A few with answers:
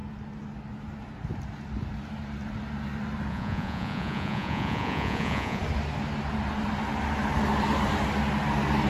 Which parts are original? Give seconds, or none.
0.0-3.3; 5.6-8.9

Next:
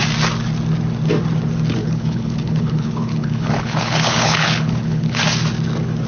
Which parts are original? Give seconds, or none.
0.0-1.8; 5.2-6.1

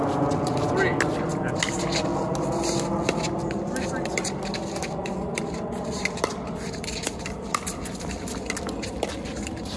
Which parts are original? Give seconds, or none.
0.0-9.8

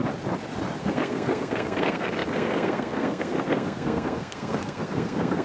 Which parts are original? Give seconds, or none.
0.0-0.8

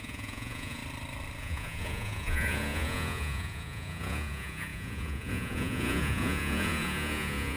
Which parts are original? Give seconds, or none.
0.8-1.4

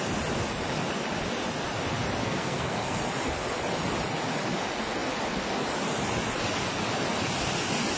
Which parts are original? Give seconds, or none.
0.0-2.2; 3.0-8.0